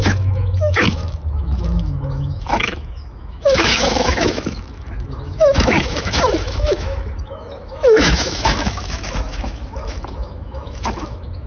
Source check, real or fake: fake